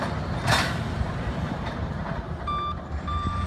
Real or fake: fake